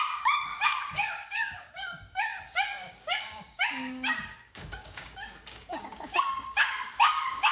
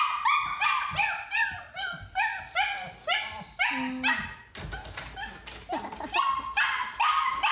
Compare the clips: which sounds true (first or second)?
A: second